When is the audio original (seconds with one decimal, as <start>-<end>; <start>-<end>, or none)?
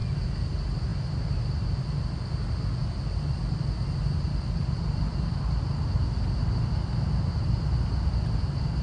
0.0-8.8